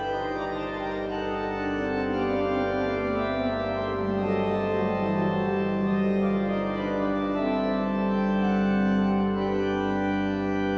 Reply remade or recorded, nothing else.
recorded